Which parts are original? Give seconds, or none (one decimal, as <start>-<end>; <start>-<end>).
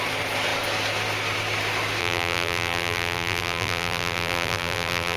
0.0-2.0